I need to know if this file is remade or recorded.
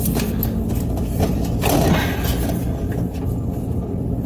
recorded